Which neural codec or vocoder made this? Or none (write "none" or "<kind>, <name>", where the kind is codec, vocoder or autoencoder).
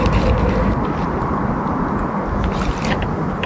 none